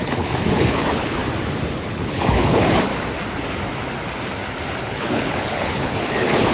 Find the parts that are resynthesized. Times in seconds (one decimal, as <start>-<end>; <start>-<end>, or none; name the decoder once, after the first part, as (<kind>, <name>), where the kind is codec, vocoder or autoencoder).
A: 0.0-1.2 (codec, HILCodec); 1.8-2.9; 4.8-6.5